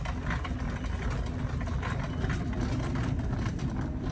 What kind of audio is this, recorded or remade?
recorded